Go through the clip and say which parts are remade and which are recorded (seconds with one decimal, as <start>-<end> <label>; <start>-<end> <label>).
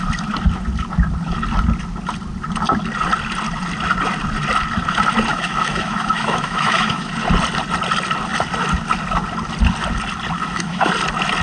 0.0-5.3 recorded; 5.3-7.1 remade; 7.1-10.4 recorded; 10.4-10.9 remade; 10.9-11.4 recorded